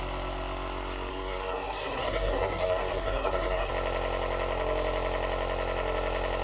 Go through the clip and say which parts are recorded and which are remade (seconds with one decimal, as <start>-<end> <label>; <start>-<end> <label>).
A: 0.0-1.1 recorded; 1.1-3.7 remade; 3.7-6.4 recorded